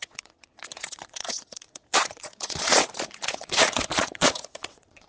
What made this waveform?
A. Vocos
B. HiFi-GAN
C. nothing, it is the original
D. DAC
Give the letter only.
A